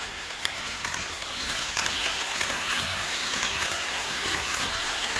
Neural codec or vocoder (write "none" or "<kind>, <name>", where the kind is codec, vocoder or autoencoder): codec, SNAC